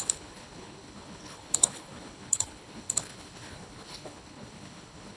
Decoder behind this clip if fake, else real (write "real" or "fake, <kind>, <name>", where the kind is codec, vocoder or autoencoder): fake, codec, HILCodec